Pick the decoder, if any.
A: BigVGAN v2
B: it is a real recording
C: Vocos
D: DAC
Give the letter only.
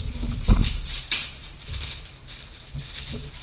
B